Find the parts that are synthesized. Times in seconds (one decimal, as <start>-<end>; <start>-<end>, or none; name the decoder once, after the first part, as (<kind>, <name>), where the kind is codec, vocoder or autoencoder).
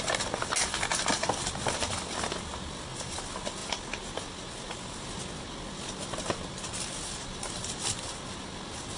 none